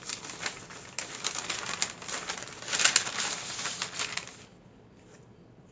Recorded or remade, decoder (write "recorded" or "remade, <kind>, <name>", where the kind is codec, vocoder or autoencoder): recorded